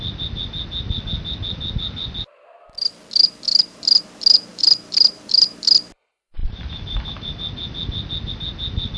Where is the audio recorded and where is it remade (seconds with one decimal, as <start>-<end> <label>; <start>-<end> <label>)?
0.0-3.5 recorded; 3.5-4.0 remade; 4.0-4.5 recorded; 4.5-5.9 remade; 5.9-9.0 recorded

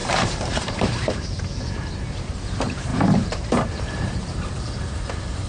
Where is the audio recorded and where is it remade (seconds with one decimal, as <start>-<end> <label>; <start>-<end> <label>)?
0.0-1.4 remade; 1.4-2.9 recorded; 2.9-4.6 remade; 4.6-5.5 recorded

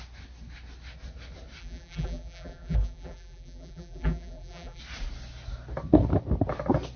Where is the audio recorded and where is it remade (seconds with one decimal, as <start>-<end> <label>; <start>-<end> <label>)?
0.0-1.6 recorded; 1.6-4.8 remade; 4.8-7.0 recorded

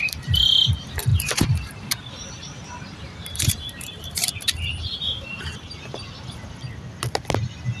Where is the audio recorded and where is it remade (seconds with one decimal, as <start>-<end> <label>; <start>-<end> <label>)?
0.0-1.1 recorded; 1.1-5.8 remade; 5.8-7.8 recorded

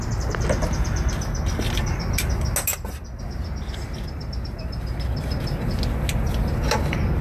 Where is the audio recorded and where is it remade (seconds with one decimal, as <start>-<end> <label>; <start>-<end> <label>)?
0.0-7.2 recorded

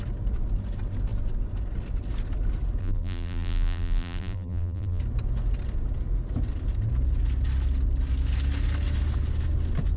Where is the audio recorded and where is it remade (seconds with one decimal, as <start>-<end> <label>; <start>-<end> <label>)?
0.0-2.8 recorded; 2.8-5.0 remade; 5.0-10.0 recorded

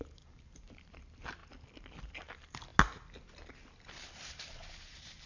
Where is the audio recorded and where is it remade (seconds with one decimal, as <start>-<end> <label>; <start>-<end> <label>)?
0.0-1.4 remade; 1.4-2.0 recorded; 2.0-2.7 remade; 2.7-4.3 recorded; 4.3-5.3 remade

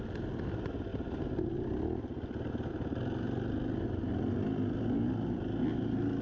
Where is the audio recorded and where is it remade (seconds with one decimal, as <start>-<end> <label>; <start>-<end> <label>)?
0.0-6.2 recorded